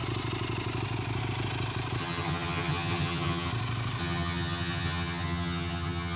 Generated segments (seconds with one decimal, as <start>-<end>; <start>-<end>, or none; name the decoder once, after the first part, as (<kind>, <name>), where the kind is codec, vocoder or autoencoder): 2.0-3.5 (vocoder, HiFi-GAN); 4.0-6.2